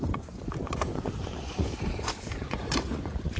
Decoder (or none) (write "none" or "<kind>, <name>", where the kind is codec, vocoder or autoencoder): vocoder, Vocos